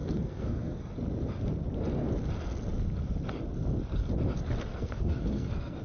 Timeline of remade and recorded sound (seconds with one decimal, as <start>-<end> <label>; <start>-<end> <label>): 0.0-0.9 remade; 0.9-4.7 recorded; 4.7-5.8 remade